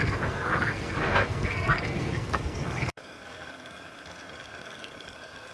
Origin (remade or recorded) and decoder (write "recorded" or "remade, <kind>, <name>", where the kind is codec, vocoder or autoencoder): remade, codec, SNAC